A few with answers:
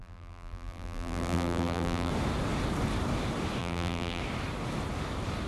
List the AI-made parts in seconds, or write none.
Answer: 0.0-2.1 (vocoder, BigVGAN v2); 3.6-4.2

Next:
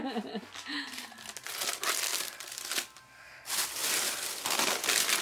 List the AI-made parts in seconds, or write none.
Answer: 2.1-2.6 (vocoder, BigVGAN v2); 3.8-4.7

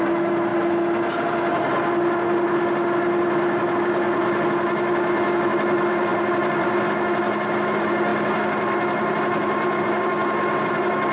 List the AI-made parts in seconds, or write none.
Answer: 6.1-6.7 (vocoder, BigVGAN v2)